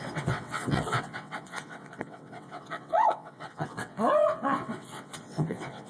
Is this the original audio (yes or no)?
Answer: no